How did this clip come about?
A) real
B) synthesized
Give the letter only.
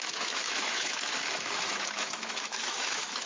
B